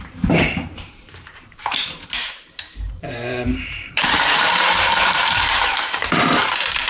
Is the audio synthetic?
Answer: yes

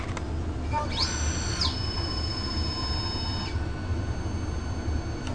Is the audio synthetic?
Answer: no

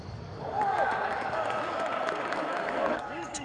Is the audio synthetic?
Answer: yes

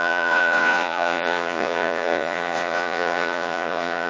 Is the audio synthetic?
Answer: yes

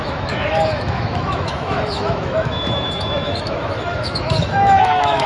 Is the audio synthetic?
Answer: yes